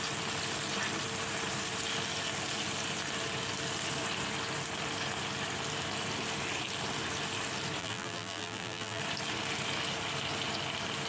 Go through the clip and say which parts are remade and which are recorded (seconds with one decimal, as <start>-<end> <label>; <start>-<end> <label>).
0.0-7.8 recorded; 7.8-9.0 remade; 9.0-11.1 recorded

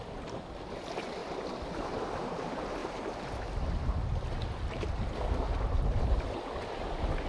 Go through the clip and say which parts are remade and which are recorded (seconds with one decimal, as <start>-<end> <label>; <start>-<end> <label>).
0.0-1.2 recorded; 1.2-2.0 remade; 2.0-7.3 recorded

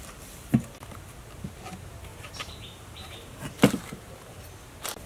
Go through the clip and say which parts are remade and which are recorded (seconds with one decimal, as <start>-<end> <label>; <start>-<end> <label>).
0.0-2.1 recorded; 2.1-4.4 remade; 4.4-5.1 recorded

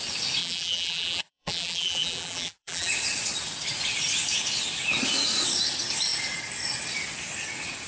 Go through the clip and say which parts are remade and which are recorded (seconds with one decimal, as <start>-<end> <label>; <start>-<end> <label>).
0.0-0.4 recorded; 0.4-2.9 remade; 2.9-7.9 recorded

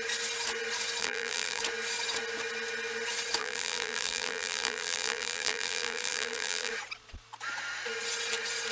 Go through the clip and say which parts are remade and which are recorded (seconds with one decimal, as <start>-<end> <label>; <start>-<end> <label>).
0.0-1.0 recorded; 1.0-1.6 remade; 1.6-3.4 recorded; 3.4-6.7 remade; 6.7-8.7 recorded